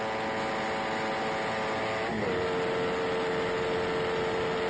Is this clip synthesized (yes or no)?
no